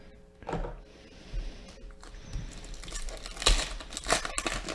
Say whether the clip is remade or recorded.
recorded